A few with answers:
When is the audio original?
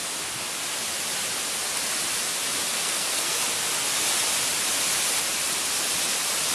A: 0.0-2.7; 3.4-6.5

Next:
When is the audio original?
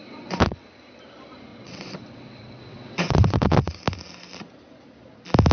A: 0.7-1.5; 3.8-5.5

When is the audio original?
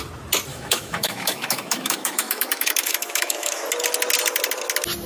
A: 0.0-0.5; 3.6-5.1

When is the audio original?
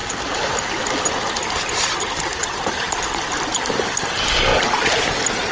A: 0.0-5.5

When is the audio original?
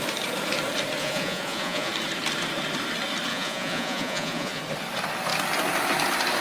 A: 0.0-1.0; 1.9-3.3; 4.6-6.4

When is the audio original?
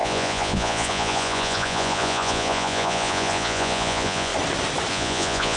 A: 4.3-4.9